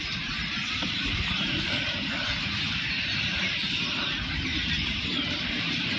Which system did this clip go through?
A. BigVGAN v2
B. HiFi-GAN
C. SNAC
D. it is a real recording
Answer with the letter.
A